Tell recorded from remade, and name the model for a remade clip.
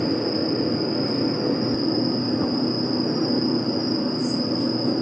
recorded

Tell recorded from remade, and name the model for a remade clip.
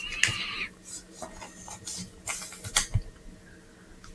recorded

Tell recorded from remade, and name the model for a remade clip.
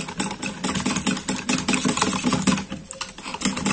recorded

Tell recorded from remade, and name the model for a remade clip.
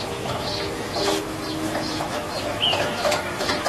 remade, autoencoder, DAC-VAE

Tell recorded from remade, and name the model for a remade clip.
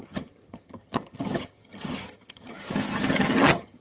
remade, vocoder, HiFi-GAN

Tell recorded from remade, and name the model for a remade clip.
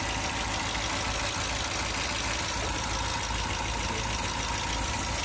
recorded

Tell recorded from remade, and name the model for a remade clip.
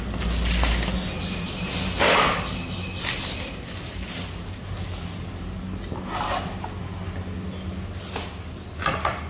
recorded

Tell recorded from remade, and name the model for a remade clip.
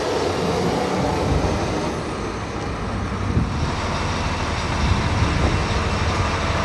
recorded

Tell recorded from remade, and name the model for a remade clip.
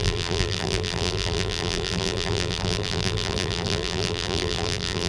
remade, vocoder, BigVGAN v2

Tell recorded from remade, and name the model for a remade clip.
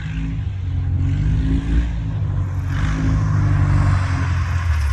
recorded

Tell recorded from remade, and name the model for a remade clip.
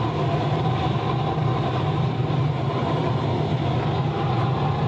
recorded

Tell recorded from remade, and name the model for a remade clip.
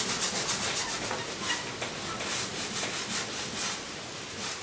recorded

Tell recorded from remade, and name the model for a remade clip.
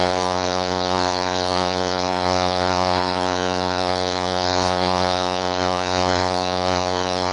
remade, codec, SNAC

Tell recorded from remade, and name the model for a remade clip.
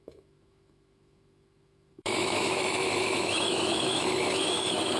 remade, autoencoder, DAC-VAE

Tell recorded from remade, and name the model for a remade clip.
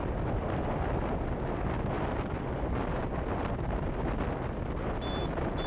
recorded